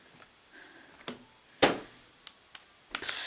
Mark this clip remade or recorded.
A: recorded